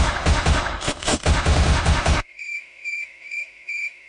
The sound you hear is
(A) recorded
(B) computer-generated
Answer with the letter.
B